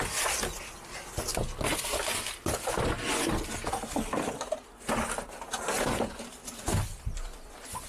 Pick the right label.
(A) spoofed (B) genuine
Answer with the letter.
B